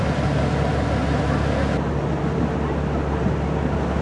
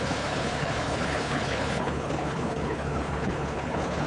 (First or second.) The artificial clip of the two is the second